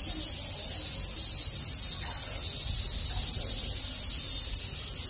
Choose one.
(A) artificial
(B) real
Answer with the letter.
B